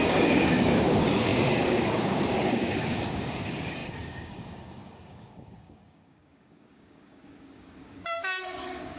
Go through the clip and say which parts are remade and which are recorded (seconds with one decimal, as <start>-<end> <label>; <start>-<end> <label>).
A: 0.0-9.0 remade